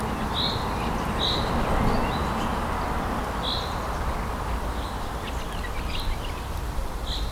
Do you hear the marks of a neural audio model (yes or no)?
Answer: no